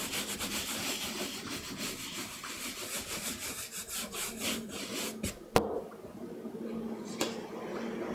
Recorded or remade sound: recorded